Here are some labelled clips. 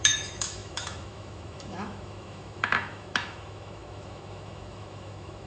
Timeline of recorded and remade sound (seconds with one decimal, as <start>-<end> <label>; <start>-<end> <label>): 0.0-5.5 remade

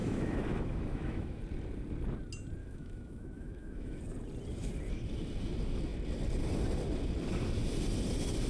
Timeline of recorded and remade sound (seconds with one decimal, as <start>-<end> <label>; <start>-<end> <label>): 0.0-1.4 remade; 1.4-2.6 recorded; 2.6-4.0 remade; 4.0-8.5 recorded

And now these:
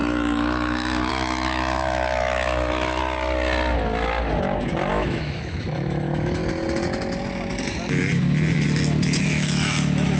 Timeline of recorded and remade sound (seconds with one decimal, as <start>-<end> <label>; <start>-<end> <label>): 0.0-3.0 remade; 3.0-4.9 recorded; 4.9-6.4 remade; 6.4-9.2 recorded; 9.2-10.2 remade